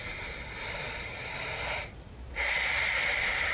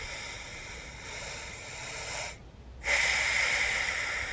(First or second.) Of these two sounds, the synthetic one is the first